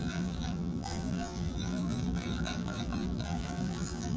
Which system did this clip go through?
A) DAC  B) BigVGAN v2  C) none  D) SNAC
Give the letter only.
B